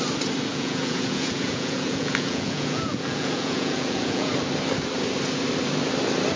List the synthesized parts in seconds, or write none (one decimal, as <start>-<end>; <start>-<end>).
0.5-4.3